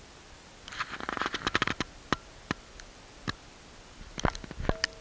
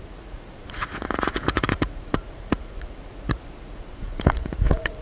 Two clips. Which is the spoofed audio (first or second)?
second